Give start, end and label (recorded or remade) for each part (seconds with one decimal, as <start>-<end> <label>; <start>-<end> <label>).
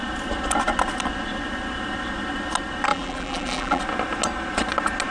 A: 0.0-2.9 recorded; 2.9-3.8 remade; 3.8-5.1 recorded